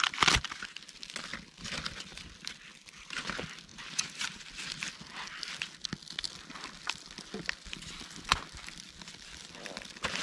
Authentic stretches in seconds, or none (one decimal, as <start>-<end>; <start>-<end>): 0.0-3.7; 4.4-10.2

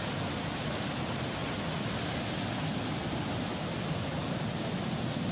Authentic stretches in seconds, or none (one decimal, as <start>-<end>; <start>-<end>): 0.0-5.3

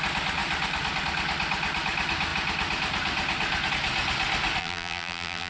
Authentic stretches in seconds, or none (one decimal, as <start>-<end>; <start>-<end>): 0.0-4.6

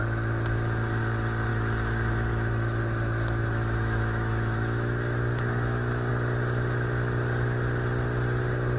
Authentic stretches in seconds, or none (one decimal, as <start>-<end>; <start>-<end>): 0.0-1.5; 6.1-8.8

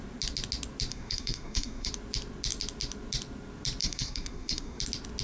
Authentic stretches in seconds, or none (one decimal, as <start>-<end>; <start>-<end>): 0.0-0.9; 1.9-3.8; 4.8-5.2